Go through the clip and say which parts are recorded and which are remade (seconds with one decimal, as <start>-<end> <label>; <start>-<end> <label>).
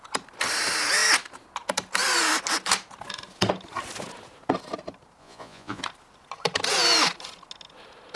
0.0-5.2 recorded; 5.2-5.8 remade; 5.8-8.2 recorded